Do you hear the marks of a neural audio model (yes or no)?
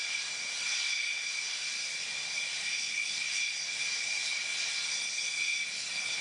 no